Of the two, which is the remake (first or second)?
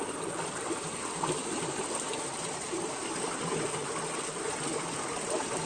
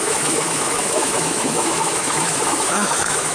second